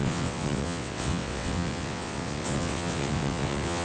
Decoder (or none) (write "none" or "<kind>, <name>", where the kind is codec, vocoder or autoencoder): vocoder, WaveNeXt